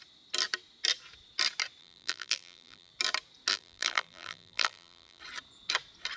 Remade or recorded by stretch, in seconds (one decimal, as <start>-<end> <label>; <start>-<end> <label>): 0.0-1.8 recorded; 1.8-2.9 remade; 2.9-3.5 recorded; 3.5-5.2 remade; 5.2-6.2 recorded